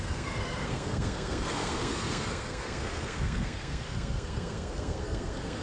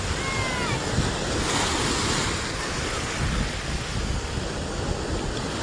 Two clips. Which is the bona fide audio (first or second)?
second